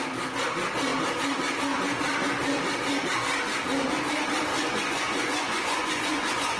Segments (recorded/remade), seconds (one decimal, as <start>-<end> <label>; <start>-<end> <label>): 0.0-4.5 recorded; 4.5-6.6 remade